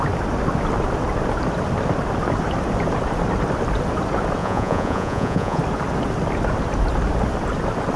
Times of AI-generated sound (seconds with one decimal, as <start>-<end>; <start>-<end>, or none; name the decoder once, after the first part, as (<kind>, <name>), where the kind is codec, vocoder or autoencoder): 4.4-5.6 (vocoder, Vocos)